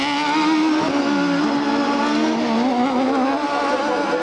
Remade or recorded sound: recorded